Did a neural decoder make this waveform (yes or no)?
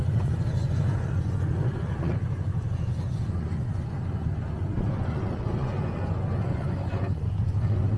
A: yes